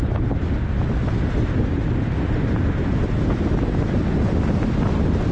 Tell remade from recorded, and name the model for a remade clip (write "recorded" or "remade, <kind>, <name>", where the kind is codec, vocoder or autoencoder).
recorded